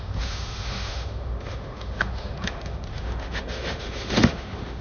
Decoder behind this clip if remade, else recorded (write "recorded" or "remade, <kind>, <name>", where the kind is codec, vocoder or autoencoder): remade, autoencoder, DAC-VAE